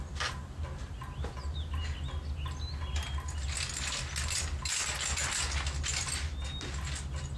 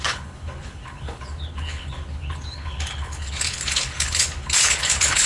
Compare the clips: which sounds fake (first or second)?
second